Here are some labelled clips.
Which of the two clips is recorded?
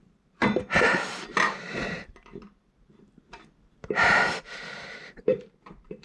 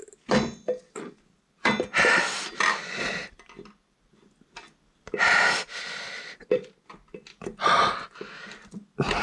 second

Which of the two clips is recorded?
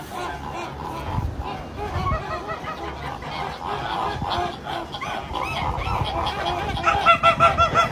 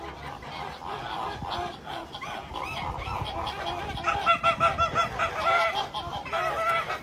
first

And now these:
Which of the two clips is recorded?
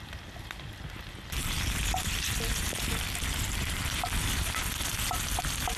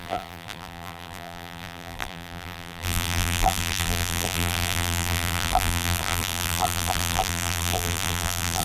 first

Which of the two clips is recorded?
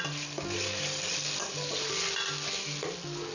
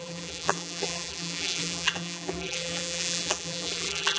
first